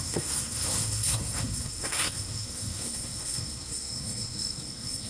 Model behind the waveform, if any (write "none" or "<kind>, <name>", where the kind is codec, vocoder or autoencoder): codec, SNAC